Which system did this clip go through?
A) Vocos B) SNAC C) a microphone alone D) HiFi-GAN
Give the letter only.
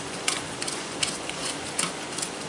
A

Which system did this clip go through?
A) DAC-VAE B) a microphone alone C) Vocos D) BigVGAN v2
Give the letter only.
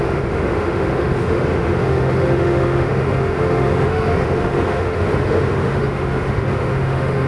A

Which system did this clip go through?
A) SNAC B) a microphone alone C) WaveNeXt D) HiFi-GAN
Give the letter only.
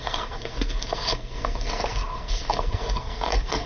A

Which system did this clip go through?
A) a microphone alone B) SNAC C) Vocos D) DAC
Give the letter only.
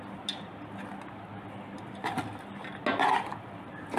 A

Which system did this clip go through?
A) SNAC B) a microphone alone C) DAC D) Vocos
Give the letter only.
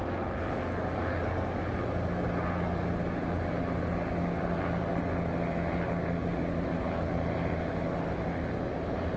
B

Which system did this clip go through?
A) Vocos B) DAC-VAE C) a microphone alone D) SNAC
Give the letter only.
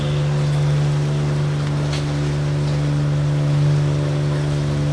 C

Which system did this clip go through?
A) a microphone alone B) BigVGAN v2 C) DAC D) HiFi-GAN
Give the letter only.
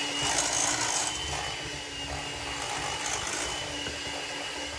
A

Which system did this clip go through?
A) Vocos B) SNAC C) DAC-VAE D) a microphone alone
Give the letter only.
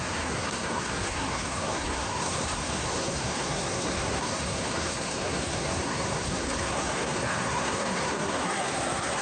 B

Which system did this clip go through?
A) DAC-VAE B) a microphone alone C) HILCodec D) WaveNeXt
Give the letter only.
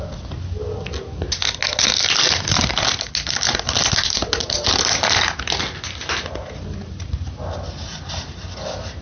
B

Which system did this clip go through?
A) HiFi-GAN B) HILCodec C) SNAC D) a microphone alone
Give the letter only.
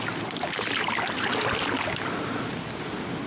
D